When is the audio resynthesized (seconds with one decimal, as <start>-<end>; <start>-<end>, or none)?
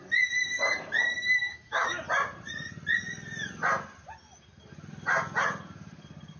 1.4-2.0